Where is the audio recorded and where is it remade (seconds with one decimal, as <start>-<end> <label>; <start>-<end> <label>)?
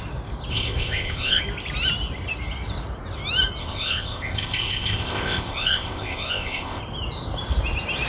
0.0-0.5 recorded; 0.5-1.4 remade; 1.4-3.6 recorded; 3.6-6.8 remade; 6.8-8.1 recorded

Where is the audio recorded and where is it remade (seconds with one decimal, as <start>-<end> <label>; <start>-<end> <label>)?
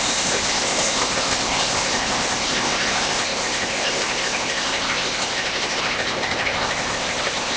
0.0-7.6 remade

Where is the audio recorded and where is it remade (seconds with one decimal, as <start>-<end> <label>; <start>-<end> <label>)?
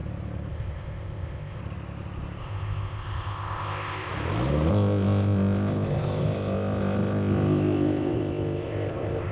0.0-0.5 recorded; 0.5-1.6 remade; 1.6-2.4 recorded; 2.4-4.1 remade; 4.1-4.7 recorded; 4.7-9.3 remade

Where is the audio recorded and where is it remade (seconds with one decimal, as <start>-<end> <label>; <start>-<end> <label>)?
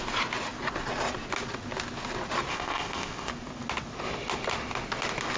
0.0-2.5 recorded; 2.5-3.3 remade; 3.3-5.4 recorded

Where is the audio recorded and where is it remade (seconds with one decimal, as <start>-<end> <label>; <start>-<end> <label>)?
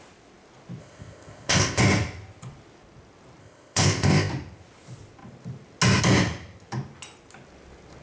0.0-0.8 recorded; 0.8-1.8 remade; 1.8-3.4 recorded; 3.4-4.3 remade; 4.3-8.0 recorded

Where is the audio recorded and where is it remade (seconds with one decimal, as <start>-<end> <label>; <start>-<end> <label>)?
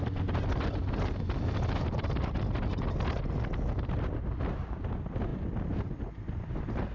0.0-6.9 recorded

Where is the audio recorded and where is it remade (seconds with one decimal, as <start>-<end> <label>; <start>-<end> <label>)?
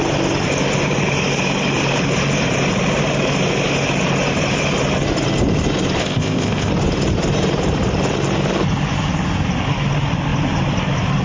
0.0-6.0 recorded; 6.0-6.7 remade; 6.7-11.2 recorded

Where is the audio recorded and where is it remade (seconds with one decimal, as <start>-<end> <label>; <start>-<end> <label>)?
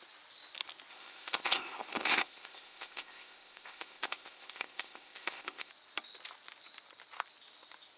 0.0-0.9 recorded; 0.9-5.7 remade; 5.7-8.0 recorded